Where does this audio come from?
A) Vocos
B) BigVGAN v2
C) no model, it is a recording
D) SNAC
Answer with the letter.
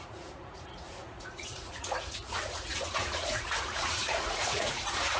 A